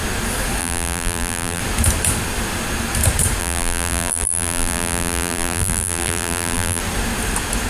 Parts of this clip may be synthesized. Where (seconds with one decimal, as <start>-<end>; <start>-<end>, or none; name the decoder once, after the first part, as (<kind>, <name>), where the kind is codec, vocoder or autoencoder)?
0.6-1.6 (vocoder, BigVGAN v2); 3.4-6.8

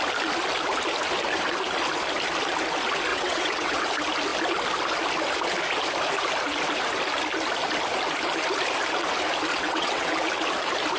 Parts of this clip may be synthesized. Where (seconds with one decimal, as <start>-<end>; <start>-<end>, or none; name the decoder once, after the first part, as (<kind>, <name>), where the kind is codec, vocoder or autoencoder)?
3.1-3.8 (vocoder, WaveNeXt); 9.5-10.1

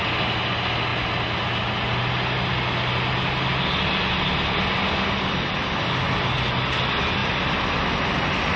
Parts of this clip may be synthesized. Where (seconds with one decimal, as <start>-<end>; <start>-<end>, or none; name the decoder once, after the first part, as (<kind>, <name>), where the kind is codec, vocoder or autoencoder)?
none

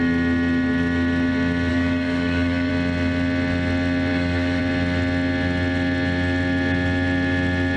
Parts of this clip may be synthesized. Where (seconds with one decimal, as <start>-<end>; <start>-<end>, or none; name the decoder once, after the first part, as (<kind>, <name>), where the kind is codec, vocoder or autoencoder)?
1.7-2.7 (codec, DAC); 4.1-4.6